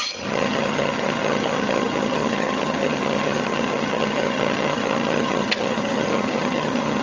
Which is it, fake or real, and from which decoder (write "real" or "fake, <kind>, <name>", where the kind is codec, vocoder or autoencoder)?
fake, vocoder, HiFi-GAN